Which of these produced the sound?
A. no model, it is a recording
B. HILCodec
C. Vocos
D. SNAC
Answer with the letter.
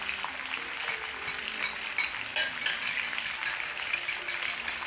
A